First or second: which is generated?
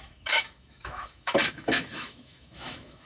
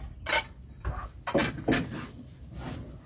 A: first